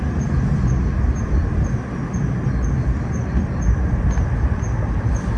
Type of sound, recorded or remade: recorded